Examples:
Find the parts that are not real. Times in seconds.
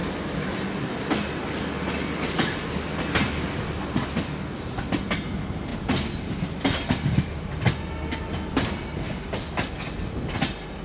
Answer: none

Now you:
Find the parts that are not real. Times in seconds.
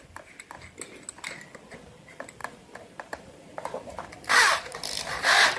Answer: 2.4-4.0 (vocoder, BigVGAN v2)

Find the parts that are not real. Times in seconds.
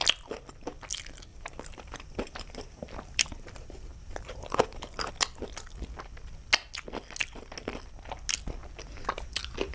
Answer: 1.3-5.1 (vocoder, BigVGAN v2); 8.6-9.2